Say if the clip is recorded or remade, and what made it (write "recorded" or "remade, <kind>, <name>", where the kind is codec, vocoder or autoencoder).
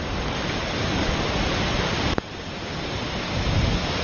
recorded